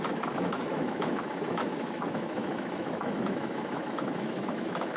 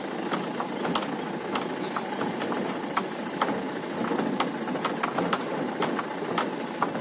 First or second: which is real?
second